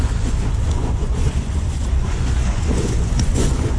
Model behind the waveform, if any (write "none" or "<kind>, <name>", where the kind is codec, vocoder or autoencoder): vocoder, Vocos